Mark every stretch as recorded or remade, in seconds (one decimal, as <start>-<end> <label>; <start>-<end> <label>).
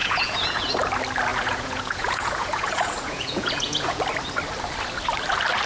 0.0-0.7 remade; 0.7-1.3 recorded; 1.3-4.0 remade; 4.0-5.7 recorded